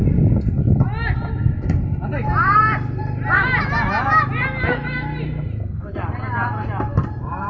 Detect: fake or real real